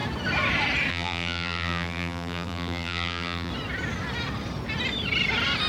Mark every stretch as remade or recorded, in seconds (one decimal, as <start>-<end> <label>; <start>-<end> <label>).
0.0-0.9 recorded; 0.9-3.5 remade; 3.5-5.7 recorded